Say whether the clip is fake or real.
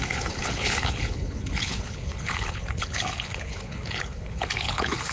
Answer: fake